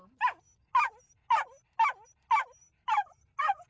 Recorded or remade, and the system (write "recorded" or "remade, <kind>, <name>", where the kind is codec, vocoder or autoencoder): recorded